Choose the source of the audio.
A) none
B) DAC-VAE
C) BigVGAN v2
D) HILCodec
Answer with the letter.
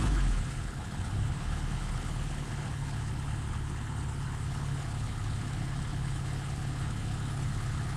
D